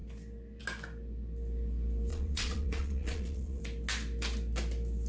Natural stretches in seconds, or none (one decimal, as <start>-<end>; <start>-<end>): 0.0-2.1; 3.6-5.1